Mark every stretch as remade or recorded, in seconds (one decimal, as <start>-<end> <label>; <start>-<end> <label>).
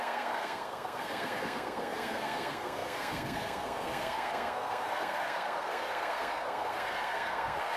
0.0-7.8 remade